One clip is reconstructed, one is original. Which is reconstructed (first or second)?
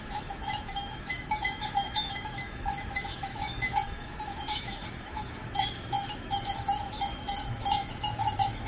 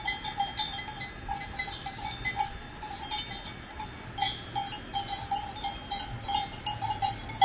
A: first